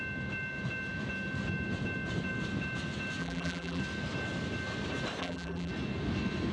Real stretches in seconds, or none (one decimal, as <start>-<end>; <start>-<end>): 0.0-3.2; 3.8-5.2; 5.7-6.5